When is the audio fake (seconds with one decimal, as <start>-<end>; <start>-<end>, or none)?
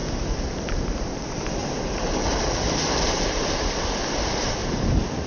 0.0-0.8; 1.6-4.0; 4.6-5.3